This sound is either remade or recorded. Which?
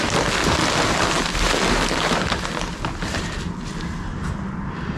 recorded